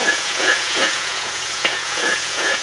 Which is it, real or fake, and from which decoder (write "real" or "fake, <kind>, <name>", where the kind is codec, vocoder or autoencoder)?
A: fake, vocoder, Vocos